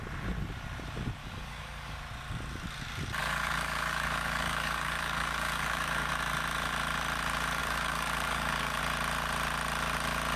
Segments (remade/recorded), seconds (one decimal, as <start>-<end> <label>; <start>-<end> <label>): 0.0-1.2 recorded; 1.2-2.0 remade; 2.0-3.2 recorded; 3.2-6.1 remade; 6.1-7.6 recorded; 7.6-8.8 remade; 8.8-10.4 recorded